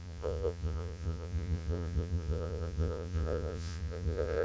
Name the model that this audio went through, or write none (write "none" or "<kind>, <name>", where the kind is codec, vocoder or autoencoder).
vocoder, Vocos